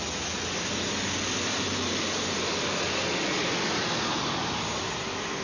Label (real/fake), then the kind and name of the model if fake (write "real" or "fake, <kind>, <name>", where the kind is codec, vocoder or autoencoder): real